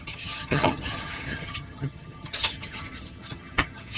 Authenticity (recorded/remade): remade